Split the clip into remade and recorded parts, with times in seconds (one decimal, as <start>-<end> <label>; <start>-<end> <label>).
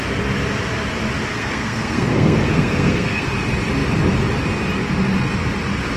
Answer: 0.0-1.3 recorded; 1.3-3.3 remade; 3.3-6.0 recorded